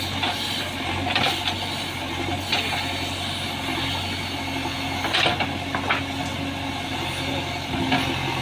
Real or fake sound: real